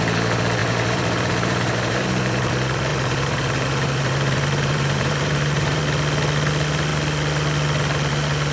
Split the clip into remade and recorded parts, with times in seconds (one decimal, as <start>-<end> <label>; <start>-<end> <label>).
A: 0.0-0.6 recorded; 0.6-2.5 remade; 2.5-2.9 recorded; 2.9-5.8 remade; 5.8-8.5 recorded